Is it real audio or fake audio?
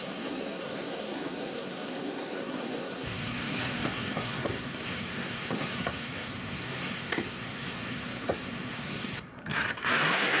fake